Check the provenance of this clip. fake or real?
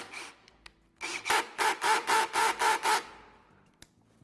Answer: real